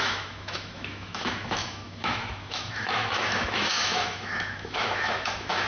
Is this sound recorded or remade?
remade